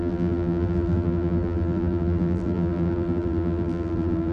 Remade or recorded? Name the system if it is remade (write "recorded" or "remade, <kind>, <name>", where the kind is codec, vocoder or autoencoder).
remade, vocoder, BigVGAN v2